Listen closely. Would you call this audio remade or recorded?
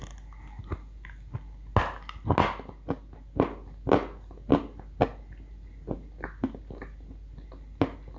recorded